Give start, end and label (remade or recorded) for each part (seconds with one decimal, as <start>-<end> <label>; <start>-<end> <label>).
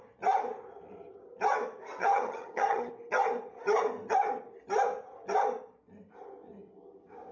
0.0-2.0 recorded; 2.0-2.9 remade; 2.9-7.3 recorded